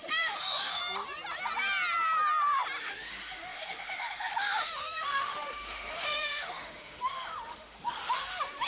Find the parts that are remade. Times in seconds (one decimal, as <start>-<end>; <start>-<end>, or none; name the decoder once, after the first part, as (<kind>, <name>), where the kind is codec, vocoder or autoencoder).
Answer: 0.0-0.8 (autoencoder, DAC-VAE); 2.8-8.7